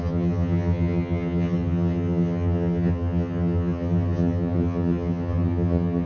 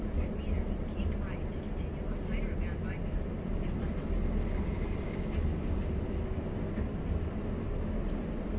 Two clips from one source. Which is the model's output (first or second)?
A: first